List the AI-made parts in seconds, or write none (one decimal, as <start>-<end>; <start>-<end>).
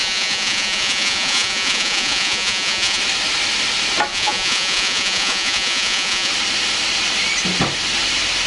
0.0-3.0; 4.1-6.3